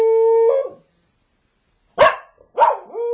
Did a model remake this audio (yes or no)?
no